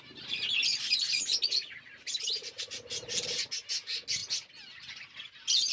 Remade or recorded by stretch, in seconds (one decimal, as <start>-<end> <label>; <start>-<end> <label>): 0.0-5.7 recorded